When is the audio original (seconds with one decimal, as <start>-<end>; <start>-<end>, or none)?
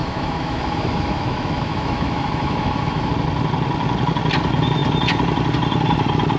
3.1-6.4